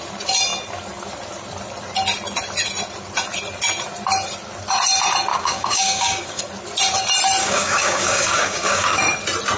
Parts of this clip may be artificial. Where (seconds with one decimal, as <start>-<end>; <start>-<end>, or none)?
5.3-6.4; 7.4-9.0